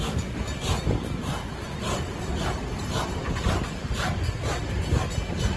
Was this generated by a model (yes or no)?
no